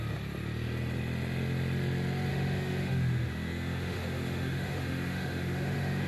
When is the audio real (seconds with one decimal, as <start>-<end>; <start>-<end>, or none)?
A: 0.0-2.3